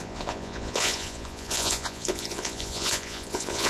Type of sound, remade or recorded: remade